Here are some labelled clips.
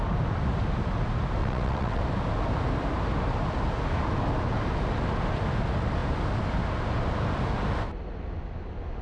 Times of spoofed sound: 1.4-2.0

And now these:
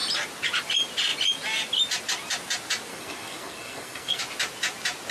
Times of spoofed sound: 2.9-4.2

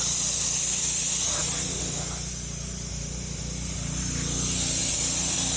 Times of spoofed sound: none